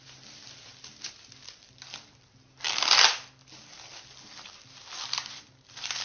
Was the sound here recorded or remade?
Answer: recorded